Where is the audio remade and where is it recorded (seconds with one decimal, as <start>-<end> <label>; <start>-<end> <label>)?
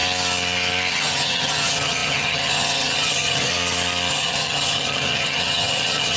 0.0-0.9 recorded; 0.9-3.5 remade; 3.5-4.1 recorded; 4.1-6.2 remade